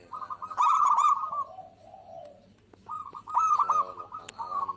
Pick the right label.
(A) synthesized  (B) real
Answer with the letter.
B